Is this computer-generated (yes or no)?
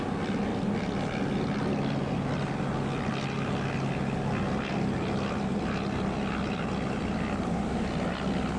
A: no